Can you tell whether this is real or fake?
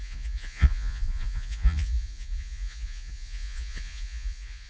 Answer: fake